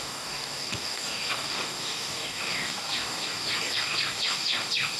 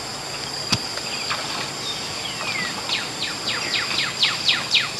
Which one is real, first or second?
second